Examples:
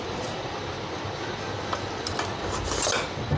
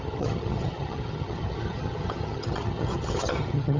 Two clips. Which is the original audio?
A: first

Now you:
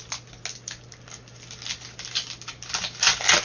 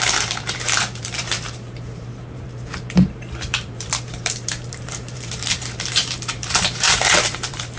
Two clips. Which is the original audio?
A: first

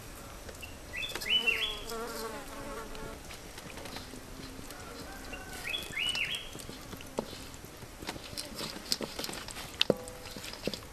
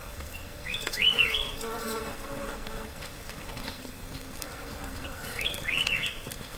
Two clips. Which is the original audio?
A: first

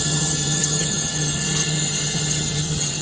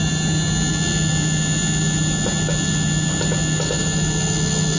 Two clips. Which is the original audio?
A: second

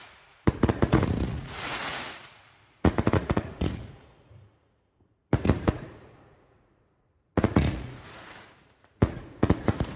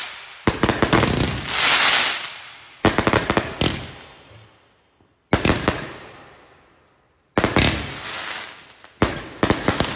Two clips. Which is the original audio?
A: second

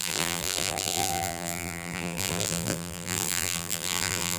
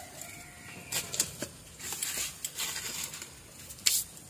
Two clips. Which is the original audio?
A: second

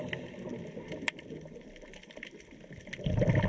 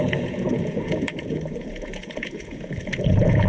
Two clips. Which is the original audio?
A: first